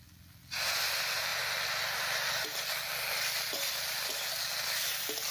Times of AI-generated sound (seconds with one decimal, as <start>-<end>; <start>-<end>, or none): 1.3-4.5